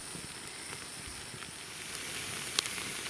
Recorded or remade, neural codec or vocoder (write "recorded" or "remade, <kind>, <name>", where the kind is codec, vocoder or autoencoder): recorded